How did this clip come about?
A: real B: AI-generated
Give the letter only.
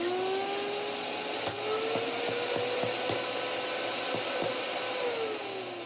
A